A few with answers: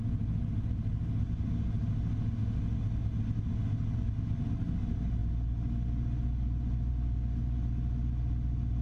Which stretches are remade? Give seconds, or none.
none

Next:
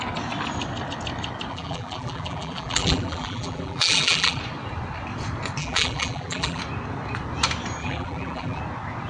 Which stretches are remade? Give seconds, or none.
1.5-4.4 (vocoder, BigVGAN v2); 5.6-6.6; 7.8-8.6

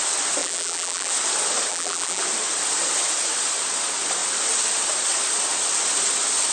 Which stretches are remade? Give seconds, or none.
0.4-1.1 (vocoder, BigVGAN v2); 1.7-2.2

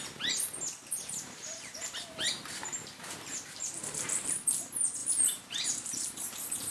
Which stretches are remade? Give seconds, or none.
0.9-4.6 (vocoder, BigVGAN v2); 5.0-6.7

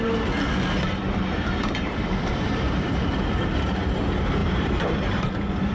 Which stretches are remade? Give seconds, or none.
1.3-4.0 (vocoder, BigVGAN v2); 4.4-5.2

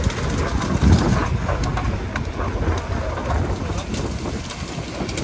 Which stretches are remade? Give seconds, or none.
none